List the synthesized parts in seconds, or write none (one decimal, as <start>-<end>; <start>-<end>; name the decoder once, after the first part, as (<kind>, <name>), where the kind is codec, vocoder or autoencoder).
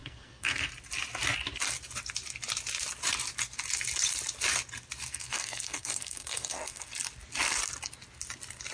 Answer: 0.0-0.7 (codec, SNAC); 5.1-6.9